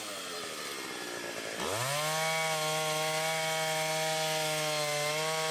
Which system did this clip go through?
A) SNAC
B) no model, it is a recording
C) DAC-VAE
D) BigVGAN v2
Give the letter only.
B